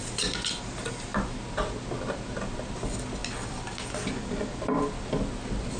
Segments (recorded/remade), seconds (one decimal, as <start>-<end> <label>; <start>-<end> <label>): 0.0-5.8 recorded

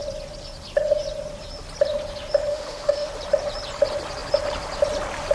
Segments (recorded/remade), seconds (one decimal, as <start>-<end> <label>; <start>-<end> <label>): 0.0-2.5 recorded; 2.5-3.1 remade; 3.1-5.3 recorded

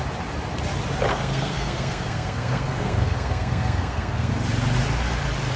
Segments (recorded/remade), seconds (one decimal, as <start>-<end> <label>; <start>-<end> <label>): 0.0-1.1 recorded; 1.1-4.3 remade; 4.3-5.6 recorded

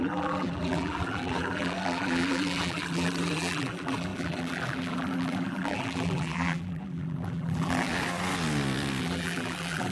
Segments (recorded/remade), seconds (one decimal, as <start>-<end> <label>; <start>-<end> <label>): 0.0-7.9 remade; 7.9-9.0 recorded; 9.0-9.9 remade

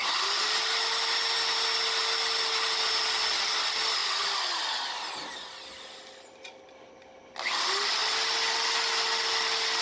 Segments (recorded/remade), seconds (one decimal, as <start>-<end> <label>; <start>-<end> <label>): 0.0-9.8 recorded

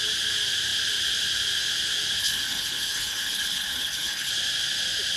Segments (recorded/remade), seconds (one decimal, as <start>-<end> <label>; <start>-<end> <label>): 0.0-2.2 recorded; 2.2-4.3 remade; 4.3-5.2 recorded

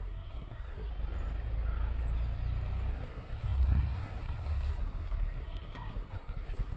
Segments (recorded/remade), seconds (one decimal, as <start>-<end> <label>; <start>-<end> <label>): 0.0-0.9 remade; 0.9-2.9 recorded; 2.9-6.8 remade

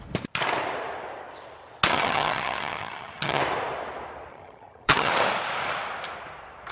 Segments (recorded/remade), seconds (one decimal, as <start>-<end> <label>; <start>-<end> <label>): 0.0-1.9 recorded; 1.9-3.4 remade; 3.4-4.3 recorded; 4.3-5.1 remade; 5.1-6.7 recorded